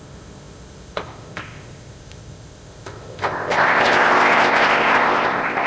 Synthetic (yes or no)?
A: yes